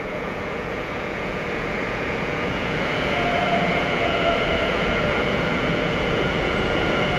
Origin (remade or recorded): remade